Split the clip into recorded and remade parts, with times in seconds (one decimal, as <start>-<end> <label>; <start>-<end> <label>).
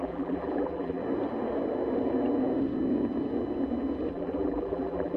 0.0-1.0 remade; 1.0-4.1 recorded; 4.1-5.2 remade